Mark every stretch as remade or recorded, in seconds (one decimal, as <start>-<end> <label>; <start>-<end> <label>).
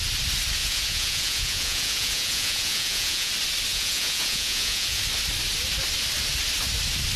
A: 0.0-0.6 recorded; 0.6-3.3 remade; 3.3-3.7 recorded; 3.7-5.0 remade; 5.0-7.2 recorded